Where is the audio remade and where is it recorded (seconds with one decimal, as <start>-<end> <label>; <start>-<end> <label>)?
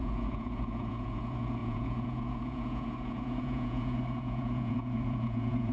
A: 0.0-5.7 remade